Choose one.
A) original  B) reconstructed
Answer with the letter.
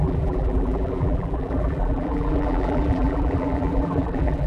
B